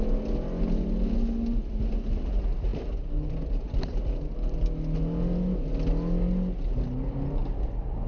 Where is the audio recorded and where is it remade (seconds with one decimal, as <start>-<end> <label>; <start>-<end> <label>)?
0.0-8.1 recorded